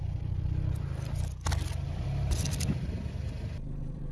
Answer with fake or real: fake